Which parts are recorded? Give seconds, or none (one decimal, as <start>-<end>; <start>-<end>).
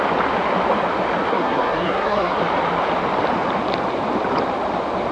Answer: 0.0-1.3; 2.4-5.1